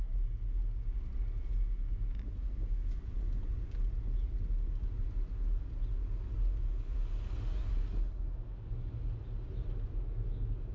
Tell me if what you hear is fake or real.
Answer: real